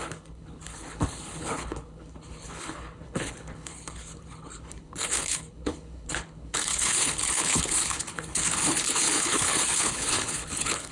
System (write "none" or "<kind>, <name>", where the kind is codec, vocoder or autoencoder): codec, HILCodec